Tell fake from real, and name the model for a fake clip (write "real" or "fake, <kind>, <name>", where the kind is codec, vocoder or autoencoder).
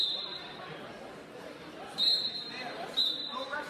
fake, vocoder, BigVGAN v2